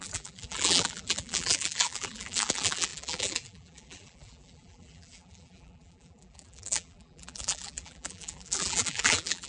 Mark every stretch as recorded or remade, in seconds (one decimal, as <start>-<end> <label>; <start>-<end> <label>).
0.0-9.5 remade